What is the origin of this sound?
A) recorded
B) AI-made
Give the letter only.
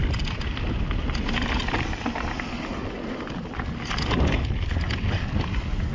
A